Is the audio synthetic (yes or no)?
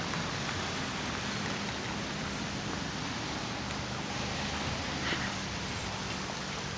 no